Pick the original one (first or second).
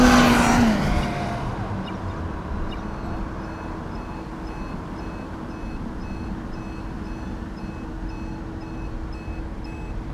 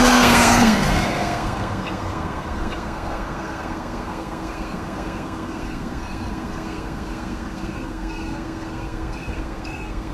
first